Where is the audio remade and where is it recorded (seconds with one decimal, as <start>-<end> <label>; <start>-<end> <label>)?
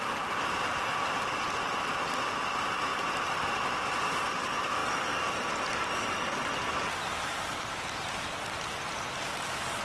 0.0-9.8 recorded